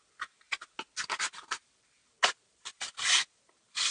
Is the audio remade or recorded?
recorded